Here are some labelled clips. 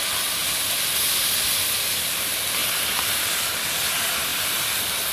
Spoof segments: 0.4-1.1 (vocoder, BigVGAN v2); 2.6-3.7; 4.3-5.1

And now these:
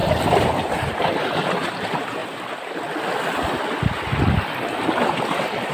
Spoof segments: 0.0-2.2 (vocoder, BigVGAN v2); 4.9-5.7

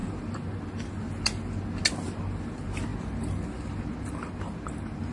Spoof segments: none

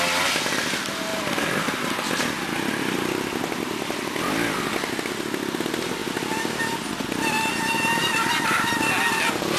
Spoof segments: 1.1-2.0 (vocoder, BigVGAN v2); 6.0-6.6; 8.0-8.7

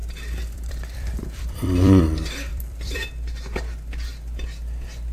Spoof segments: 0.0-2.0 (vocoder, BigVGAN v2); 2.5-3.1